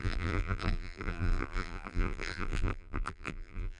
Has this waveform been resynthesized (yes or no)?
yes